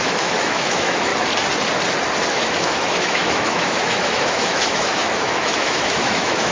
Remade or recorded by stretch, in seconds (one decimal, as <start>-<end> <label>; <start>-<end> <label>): 0.0-1.1 remade; 1.1-2.3 recorded; 2.3-6.5 remade